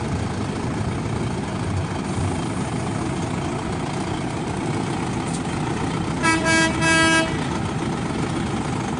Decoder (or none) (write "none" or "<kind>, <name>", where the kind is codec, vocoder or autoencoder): none